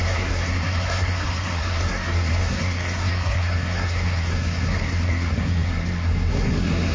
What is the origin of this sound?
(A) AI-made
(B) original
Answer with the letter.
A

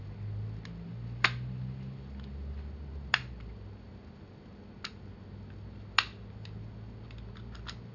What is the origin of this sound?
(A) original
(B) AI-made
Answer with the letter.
A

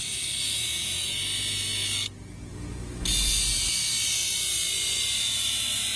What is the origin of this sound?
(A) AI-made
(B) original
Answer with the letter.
B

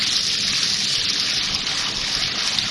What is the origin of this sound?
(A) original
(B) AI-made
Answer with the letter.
A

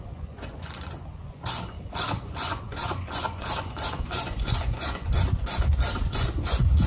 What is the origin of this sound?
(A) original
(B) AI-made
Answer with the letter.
B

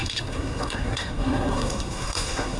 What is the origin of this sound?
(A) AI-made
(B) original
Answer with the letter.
A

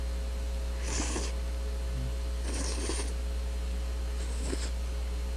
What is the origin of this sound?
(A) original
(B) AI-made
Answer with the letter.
A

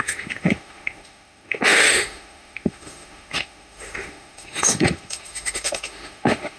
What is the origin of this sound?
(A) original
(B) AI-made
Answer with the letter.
B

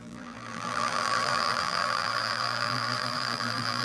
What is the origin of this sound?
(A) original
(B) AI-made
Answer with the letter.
B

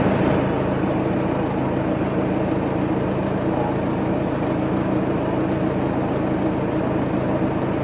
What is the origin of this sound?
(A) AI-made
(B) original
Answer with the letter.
B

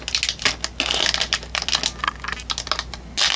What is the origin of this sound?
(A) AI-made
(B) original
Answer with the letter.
B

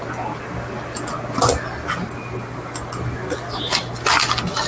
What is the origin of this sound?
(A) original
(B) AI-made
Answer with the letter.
A